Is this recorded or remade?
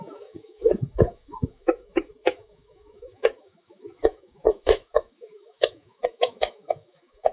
remade